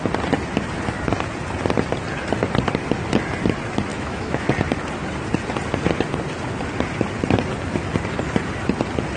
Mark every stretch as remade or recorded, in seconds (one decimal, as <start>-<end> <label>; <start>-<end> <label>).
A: 0.0-3.9 recorded; 3.9-4.5 remade; 4.5-9.2 recorded